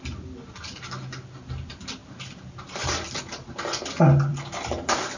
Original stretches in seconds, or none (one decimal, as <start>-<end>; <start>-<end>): 0.0-2.0; 3.2-4.3